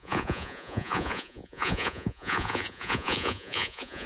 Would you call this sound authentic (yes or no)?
no